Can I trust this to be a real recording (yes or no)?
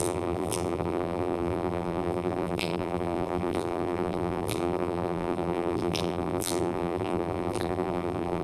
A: no